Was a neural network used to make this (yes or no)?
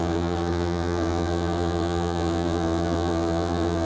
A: yes